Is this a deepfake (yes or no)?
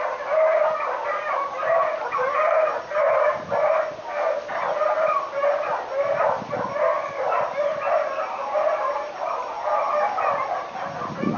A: no